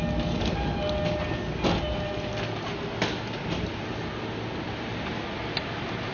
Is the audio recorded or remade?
recorded